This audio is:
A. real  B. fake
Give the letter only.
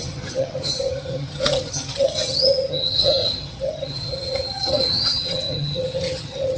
B